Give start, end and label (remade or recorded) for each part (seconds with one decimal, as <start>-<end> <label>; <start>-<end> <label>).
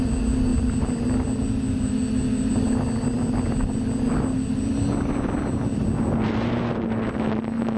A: 0.0-7.8 recorded